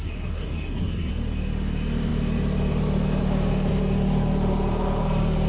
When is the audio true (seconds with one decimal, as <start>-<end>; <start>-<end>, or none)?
1.1-5.5